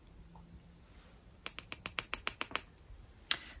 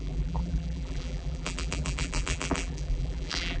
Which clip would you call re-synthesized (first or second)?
second